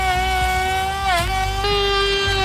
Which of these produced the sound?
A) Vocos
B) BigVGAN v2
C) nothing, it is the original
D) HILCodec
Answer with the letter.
C